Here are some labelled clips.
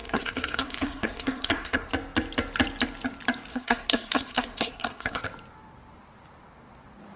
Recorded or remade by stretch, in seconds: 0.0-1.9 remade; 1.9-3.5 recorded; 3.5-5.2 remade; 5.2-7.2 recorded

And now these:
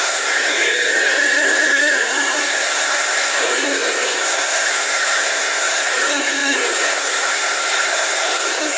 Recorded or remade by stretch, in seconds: 0.0-8.8 remade

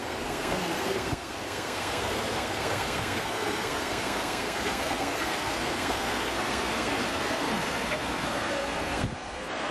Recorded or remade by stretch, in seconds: 0.0-9.7 remade

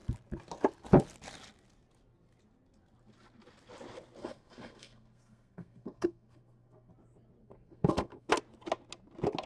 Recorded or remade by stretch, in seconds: 0.0-4.2 recorded; 4.2-6.9 remade; 6.9-7.4 recorded; 7.4-8.3 remade; 8.3-9.5 recorded

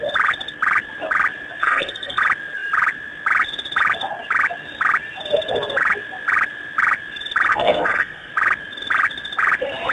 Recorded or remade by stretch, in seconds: 0.0-1.6 recorded; 1.6-2.2 remade; 2.2-7.5 recorded; 7.5-8.3 remade; 8.3-9.9 recorded

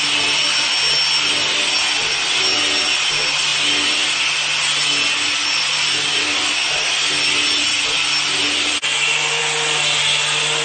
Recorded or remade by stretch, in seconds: 0.0-10.6 recorded